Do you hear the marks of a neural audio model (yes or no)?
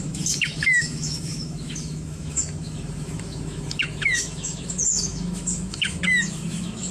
yes